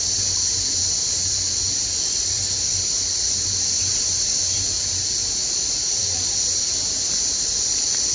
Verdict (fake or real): real